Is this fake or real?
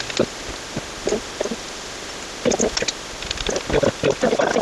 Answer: real